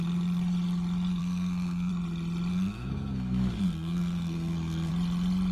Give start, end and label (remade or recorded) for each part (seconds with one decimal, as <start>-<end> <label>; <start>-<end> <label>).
0.0-1.2 recorded; 1.2-1.9 remade; 1.9-2.5 recorded; 2.5-4.9 remade; 4.9-5.5 recorded